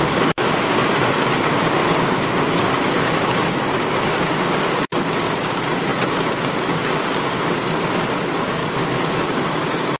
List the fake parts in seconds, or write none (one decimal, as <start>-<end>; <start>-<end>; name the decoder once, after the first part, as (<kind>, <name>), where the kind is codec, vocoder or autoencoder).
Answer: 0.0-8.6 (codec, DAC); 9.1-10.0